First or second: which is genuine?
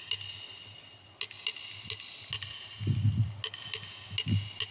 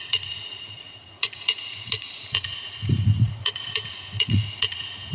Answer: first